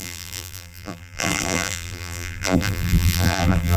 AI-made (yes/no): yes